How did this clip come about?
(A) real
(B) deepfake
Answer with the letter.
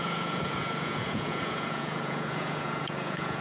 B